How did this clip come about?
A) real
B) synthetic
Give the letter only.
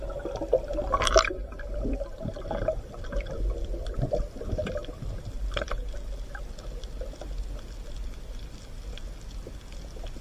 A